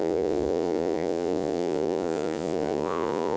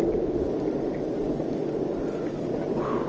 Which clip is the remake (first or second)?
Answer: first